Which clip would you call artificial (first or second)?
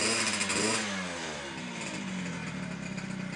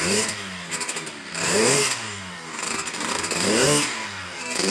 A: second